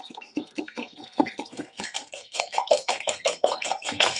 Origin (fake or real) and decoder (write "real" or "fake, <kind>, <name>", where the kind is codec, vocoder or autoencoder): fake, codec, SNAC